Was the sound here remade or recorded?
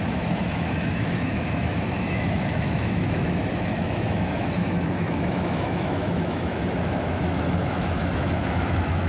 remade